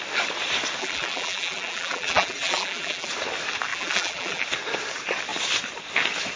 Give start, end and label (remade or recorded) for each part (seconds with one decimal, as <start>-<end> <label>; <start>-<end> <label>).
0.0-0.8 recorded; 0.8-3.1 remade; 3.1-3.7 recorded; 3.7-4.4 remade; 4.4-6.4 recorded